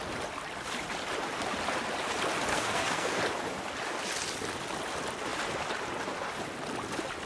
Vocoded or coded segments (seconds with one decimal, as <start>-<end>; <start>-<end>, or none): 2.5-3.2